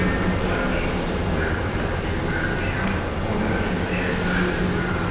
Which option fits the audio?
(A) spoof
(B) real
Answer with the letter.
B